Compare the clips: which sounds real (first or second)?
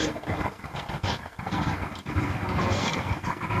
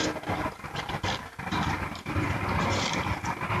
second